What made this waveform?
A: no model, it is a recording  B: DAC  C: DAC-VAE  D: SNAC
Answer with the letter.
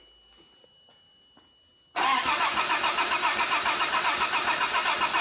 A